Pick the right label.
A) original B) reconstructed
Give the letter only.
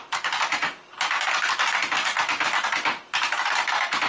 A